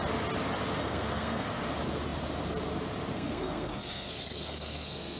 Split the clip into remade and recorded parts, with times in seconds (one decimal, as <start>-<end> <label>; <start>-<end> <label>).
0.0-0.8 recorded; 0.8-1.6 remade; 1.6-3.1 recorded; 3.1-5.2 remade